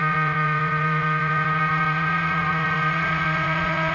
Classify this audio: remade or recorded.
remade